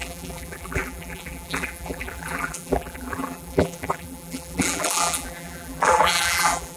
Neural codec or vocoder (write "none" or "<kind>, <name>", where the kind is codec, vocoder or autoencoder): vocoder, BigVGAN v2